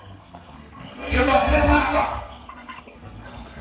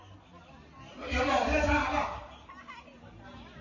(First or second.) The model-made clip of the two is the first